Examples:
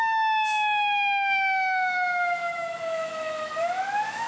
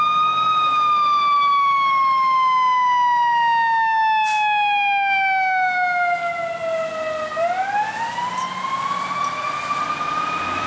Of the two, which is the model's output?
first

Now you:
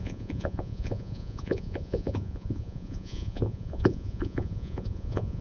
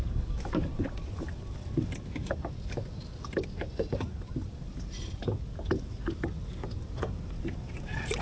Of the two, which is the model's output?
first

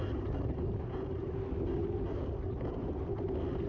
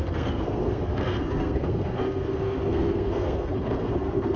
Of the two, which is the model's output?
second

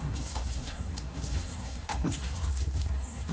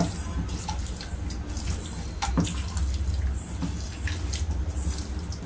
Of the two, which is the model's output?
first